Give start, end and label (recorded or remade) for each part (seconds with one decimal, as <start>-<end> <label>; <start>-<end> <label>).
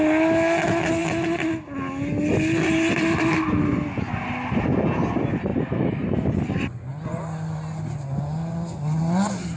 0.0-9.6 recorded